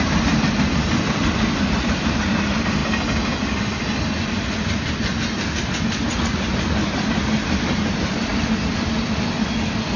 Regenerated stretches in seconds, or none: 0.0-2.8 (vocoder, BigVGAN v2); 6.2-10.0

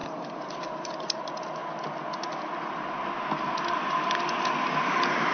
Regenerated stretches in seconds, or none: none

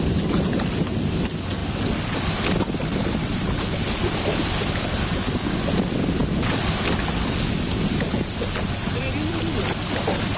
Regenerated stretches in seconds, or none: none

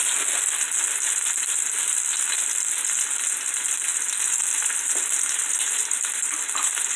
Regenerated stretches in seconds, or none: 4.2-7.0 (vocoder, BigVGAN v2)

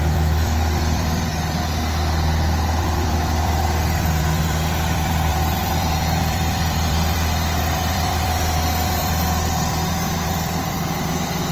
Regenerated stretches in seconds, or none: 0.0-1.3 (vocoder, BigVGAN v2); 2.8-11.5

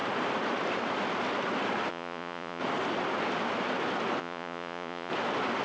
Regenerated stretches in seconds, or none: 1.9-2.6 (vocoder, Vocos); 4.2-5.1

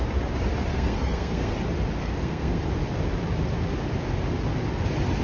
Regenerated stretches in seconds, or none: 0.7-1.5 (codec, SNAC); 2.0-2.6